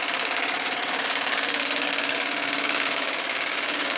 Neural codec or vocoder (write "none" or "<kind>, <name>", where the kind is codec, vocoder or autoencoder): codec, DAC